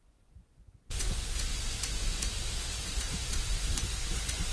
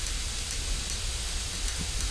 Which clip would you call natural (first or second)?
second